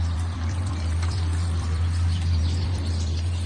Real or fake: fake